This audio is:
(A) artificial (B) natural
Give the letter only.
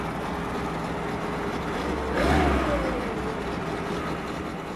B